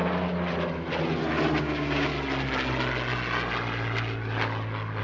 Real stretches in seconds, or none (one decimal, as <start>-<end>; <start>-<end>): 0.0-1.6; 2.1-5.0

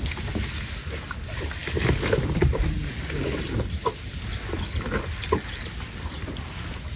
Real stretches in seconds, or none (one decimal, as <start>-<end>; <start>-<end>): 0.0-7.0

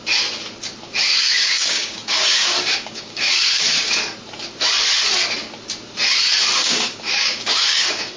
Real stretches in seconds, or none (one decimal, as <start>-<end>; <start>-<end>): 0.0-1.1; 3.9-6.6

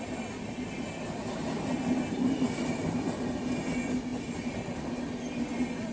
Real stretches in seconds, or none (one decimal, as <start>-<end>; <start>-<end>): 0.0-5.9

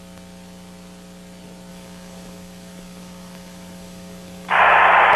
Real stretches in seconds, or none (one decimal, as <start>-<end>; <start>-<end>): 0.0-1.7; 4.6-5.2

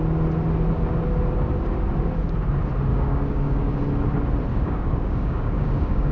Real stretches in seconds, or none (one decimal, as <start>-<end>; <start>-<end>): 0.0-2.9; 3.8-4.5

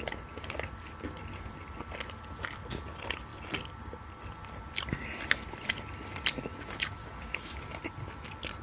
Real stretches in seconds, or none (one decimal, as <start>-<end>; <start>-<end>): 0.0-7.0; 7.6-8.6